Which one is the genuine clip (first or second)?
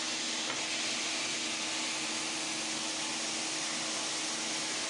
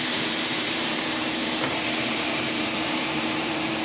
first